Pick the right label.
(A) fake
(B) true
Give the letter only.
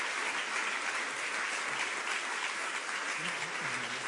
B